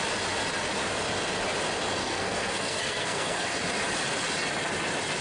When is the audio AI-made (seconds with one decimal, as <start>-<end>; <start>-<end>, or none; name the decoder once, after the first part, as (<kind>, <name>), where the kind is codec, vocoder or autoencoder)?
2.0-3.6 (codec, SNAC)